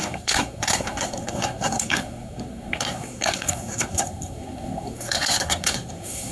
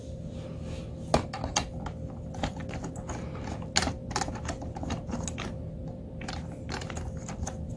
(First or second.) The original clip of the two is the second